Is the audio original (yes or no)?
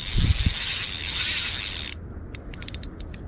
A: yes